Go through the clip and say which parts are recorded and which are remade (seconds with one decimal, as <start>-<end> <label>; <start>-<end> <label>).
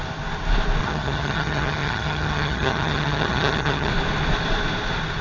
0.0-0.8 recorded; 0.8-3.9 remade; 3.9-5.2 recorded